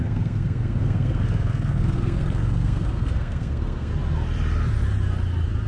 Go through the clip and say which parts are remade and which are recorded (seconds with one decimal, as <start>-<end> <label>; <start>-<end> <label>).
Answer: 0.0-3.9 remade; 3.9-5.7 recorded